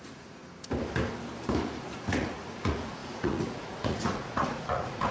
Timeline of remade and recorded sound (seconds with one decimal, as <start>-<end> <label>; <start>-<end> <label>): 0.0-0.4 remade; 0.4-1.6 recorded; 1.6-5.1 remade